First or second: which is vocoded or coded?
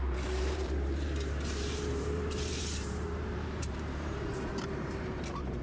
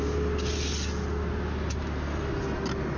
first